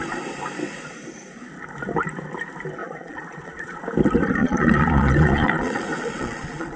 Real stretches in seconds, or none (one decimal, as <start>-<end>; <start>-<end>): 0.0-2.8; 3.8-4.4